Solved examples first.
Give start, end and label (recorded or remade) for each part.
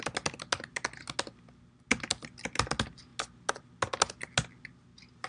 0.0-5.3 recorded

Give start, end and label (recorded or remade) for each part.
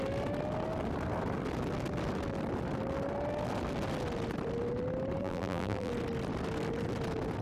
0.0-5.2 recorded; 5.2-5.9 remade; 5.9-7.4 recorded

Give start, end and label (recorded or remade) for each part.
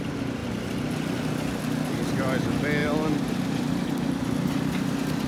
0.0-5.3 recorded